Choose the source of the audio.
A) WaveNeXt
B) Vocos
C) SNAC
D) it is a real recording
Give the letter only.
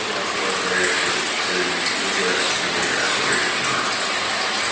D